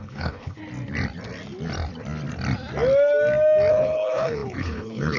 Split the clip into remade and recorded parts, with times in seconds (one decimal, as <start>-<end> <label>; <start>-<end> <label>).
0.0-0.6 remade; 0.6-3.7 recorded; 3.7-5.2 remade

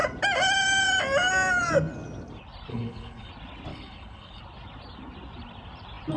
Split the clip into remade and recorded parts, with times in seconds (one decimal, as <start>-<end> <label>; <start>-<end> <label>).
0.0-2.7 recorded; 2.7-3.3 remade; 3.3-3.7 recorded; 3.7-4.4 remade; 4.4-6.2 recorded

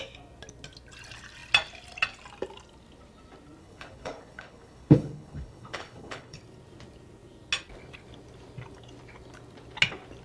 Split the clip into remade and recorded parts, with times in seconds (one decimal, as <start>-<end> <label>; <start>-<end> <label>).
0.0-3.6 recorded; 3.6-6.4 remade; 6.4-10.2 recorded

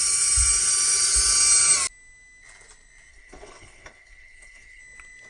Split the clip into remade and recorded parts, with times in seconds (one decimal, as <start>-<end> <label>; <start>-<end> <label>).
0.0-3.1 recorded; 3.1-4.8 remade; 4.8-5.3 recorded